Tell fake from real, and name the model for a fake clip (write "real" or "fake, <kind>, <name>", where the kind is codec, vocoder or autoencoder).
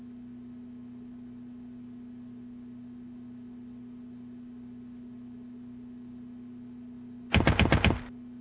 real